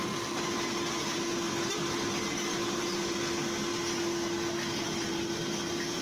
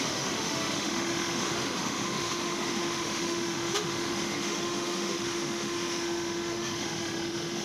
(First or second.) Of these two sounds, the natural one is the first